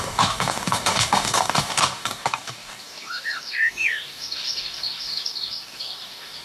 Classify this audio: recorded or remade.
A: remade